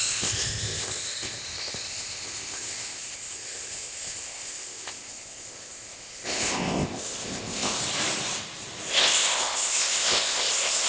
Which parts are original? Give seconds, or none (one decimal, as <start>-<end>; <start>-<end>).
7.8-8.9

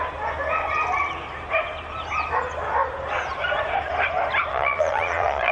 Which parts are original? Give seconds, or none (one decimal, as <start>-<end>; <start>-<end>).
0.0-4.5